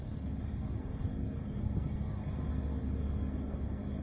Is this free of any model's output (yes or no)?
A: no